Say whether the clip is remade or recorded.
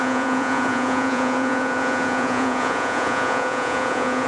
remade